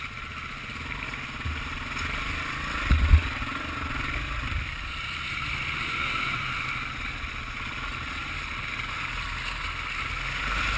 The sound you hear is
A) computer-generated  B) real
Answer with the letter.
B